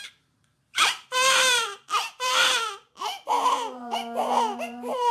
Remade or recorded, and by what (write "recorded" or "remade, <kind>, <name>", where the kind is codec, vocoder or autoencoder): remade, vocoder, BigVGAN v2